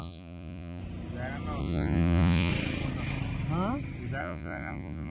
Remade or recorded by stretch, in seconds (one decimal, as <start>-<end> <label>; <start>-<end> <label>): 0.0-0.8 remade; 0.8-1.6 recorded; 1.6-2.5 remade; 2.5-4.2 recorded; 4.2-5.1 remade